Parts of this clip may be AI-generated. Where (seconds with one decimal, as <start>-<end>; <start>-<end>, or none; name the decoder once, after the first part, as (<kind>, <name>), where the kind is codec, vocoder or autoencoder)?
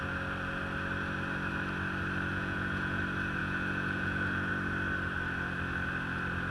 2.3-3.0 (vocoder, Vocos); 3.4-4.5